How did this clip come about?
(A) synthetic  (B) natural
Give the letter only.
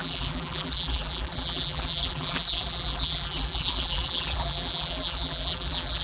A